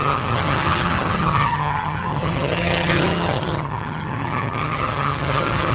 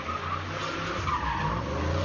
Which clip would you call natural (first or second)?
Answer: second